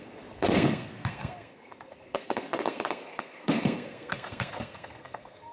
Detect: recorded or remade remade